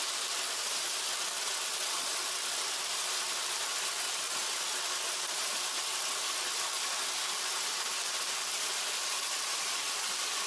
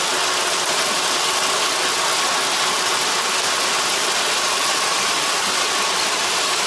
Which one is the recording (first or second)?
second